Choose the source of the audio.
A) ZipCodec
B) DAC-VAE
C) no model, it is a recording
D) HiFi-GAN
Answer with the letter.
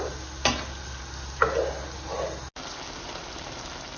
C